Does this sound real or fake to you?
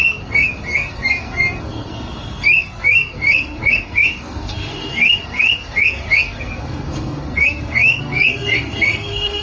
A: fake